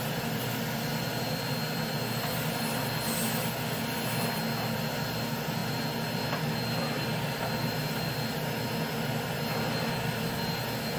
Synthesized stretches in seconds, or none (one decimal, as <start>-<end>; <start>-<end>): none